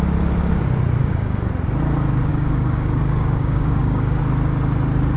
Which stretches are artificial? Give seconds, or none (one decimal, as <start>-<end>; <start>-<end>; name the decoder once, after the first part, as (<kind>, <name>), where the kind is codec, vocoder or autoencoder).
1.0-1.5 (codec, DAC); 2.3-4.2